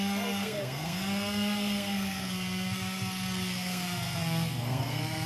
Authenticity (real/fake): fake